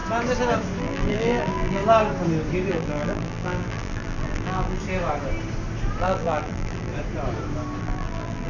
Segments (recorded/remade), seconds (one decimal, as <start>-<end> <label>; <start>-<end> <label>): 0.0-0.8 recorded; 0.8-1.8 remade; 1.8-2.7 recorded; 2.7-4.8 remade; 4.8-6.0 recorded; 6.0-6.9 remade; 6.9-7.8 recorded; 7.8-8.5 remade